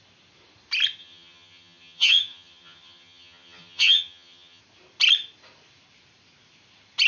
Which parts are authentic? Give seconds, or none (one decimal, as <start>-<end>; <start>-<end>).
0.0-1.0; 4.6-7.1